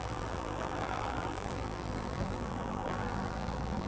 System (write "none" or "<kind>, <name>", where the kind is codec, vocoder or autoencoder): vocoder, BigVGAN v2